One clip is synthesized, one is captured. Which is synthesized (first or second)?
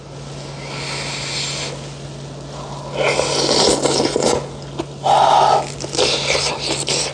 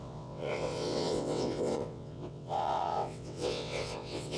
second